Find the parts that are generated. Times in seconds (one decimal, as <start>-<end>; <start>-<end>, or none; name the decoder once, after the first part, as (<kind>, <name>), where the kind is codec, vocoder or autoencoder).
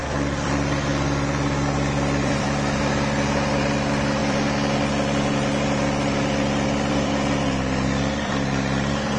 0.0-2.8 (vocoder, BigVGAN v2); 4.2-9.2